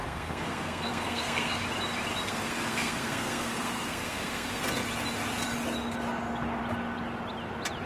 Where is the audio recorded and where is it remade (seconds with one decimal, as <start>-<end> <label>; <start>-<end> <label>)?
0.0-1.6 remade; 1.6-2.3 recorded; 2.3-4.6 remade; 4.6-7.9 recorded